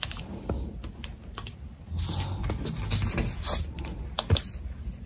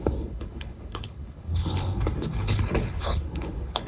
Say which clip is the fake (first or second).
second